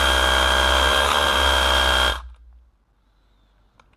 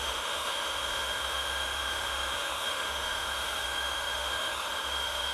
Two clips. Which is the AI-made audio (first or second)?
second